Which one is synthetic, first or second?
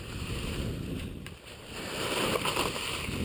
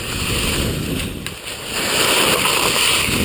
first